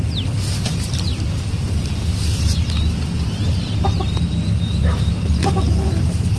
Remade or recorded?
recorded